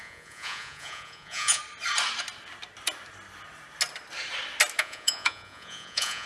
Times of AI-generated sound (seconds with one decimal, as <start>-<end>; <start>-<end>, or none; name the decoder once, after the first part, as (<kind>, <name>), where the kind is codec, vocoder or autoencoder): 0.0-1.6 (vocoder, Vocos); 4.8-6.3